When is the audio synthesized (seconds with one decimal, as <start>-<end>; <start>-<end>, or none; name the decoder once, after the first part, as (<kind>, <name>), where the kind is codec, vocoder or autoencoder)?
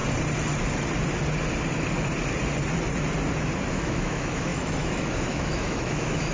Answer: 3.7-6.3 (autoencoder, DAC-VAE)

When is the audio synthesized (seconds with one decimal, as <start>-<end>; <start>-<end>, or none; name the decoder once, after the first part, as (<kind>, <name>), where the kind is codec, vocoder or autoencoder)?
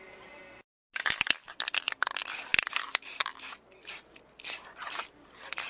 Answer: none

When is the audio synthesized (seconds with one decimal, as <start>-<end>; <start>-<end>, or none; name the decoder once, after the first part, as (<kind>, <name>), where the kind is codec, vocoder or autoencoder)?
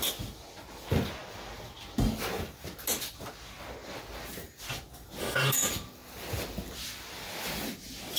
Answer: 5.2-5.7 (autoencoder, DAC-VAE)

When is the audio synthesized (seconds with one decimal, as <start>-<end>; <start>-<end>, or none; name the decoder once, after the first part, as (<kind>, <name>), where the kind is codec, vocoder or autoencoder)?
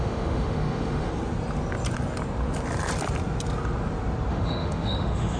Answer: 0.0-1.1 (autoencoder, DAC-VAE); 4.3-5.4